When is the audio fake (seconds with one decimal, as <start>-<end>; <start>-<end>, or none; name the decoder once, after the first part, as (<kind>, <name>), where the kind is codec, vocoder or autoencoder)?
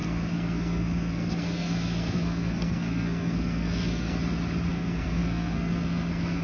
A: 0.0-4.2 (codec, SNAC); 4.7-6.4